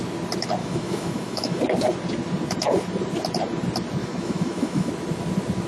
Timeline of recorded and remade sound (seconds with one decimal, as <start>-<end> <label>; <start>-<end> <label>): 0.0-0.6 recorded; 0.6-1.6 remade; 1.6-4.0 recorded; 4.0-4.9 remade; 4.9-5.7 recorded